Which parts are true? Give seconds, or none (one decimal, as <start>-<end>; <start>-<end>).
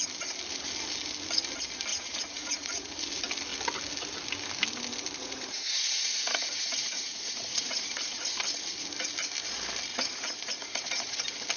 0.0-1.9; 2.9-5.2; 8.2-9.9; 11.2-11.6